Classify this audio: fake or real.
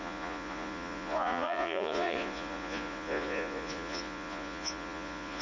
fake